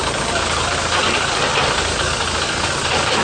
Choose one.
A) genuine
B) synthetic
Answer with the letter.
B